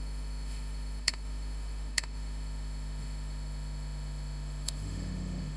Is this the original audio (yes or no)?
no